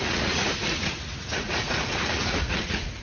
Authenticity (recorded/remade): remade